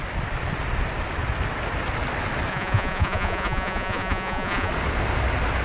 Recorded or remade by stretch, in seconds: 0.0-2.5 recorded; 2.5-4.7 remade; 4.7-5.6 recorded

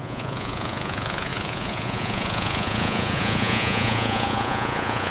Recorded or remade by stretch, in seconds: 0.0-5.1 remade

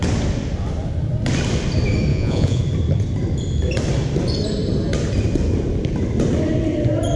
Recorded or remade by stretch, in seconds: 0.0-2.1 recorded; 2.1-2.6 remade; 2.6-7.2 recorded

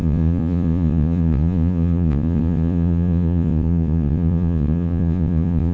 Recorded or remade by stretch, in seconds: 0.0-5.7 remade

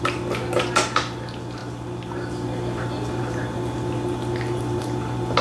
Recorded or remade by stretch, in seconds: 0.0-5.4 recorded

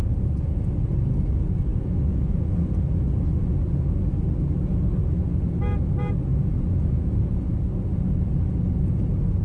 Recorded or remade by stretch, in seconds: 0.0-0.6 remade; 0.6-1.7 recorded; 1.7-2.8 remade; 2.8-6.3 recorded; 6.3-7.5 remade; 7.5-9.4 recorded